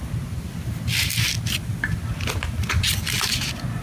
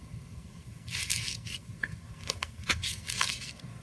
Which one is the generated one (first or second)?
second